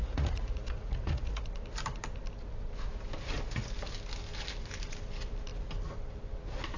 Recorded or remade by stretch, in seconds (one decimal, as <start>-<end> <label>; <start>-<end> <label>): 0.0-1.4 remade; 1.4-6.8 recorded